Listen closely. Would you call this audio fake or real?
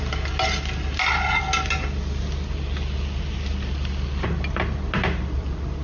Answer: real